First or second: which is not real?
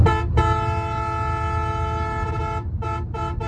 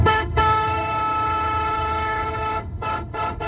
second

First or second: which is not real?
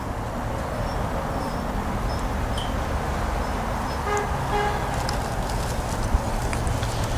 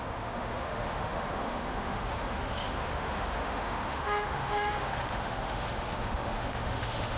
second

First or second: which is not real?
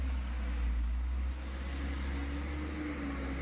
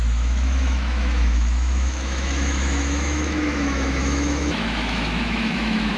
second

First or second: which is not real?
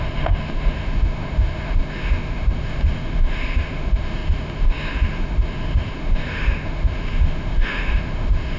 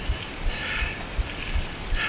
first